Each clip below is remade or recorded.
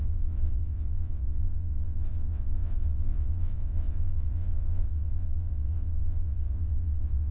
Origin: remade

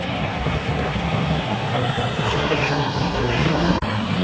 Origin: remade